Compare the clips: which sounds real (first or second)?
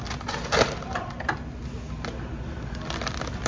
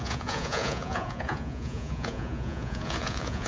first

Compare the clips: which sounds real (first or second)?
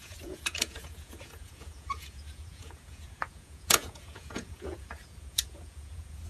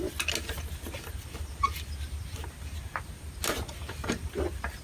second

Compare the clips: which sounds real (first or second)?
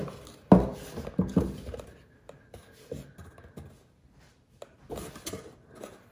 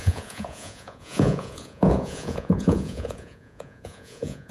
first